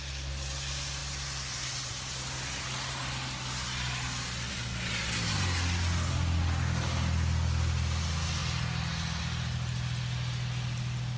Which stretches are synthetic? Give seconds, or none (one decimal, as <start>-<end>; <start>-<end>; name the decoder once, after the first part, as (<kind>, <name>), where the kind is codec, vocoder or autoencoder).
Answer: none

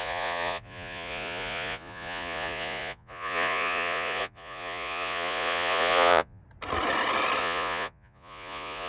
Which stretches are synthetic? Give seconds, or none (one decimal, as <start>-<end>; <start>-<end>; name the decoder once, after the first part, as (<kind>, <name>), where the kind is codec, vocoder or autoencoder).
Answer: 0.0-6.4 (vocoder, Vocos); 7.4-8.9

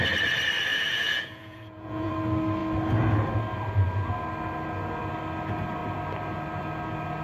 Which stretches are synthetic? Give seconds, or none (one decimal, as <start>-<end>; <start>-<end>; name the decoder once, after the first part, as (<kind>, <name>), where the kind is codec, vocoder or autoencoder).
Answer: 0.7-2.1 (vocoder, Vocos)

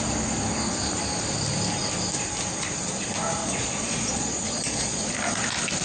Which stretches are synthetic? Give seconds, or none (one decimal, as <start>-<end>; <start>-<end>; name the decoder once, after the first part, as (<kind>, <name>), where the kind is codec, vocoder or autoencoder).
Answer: 3.4-5.0 (vocoder, Vocos)